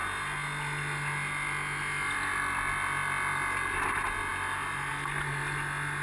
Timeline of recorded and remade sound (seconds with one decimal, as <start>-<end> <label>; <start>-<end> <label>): 0.0-6.0 recorded